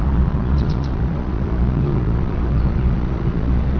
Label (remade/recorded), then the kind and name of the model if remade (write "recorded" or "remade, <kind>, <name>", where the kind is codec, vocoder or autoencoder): remade, vocoder, Vocos